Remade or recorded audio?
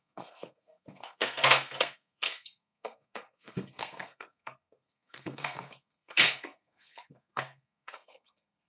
remade